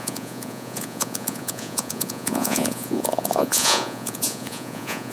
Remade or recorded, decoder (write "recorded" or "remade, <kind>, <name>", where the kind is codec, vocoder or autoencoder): remade, vocoder, Vocos